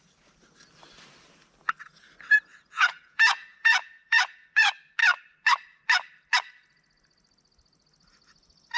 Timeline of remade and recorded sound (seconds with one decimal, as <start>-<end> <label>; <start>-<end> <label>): 0.0-2.5 recorded; 2.5-4.6 remade; 4.6-8.8 recorded